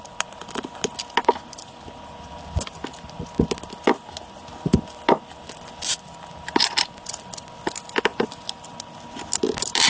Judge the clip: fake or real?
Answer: real